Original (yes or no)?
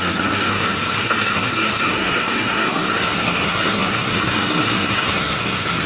no